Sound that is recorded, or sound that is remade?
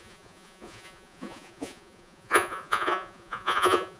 remade